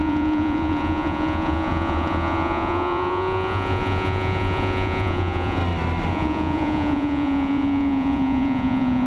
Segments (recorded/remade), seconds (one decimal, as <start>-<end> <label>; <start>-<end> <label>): 0.0-5.6 remade; 5.6-6.1 recorded; 6.1-9.1 remade